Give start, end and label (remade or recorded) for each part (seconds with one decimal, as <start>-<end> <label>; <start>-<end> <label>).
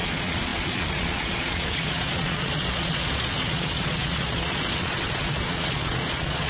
0.0-6.5 remade